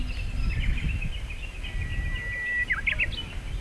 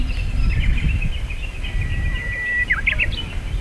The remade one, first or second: second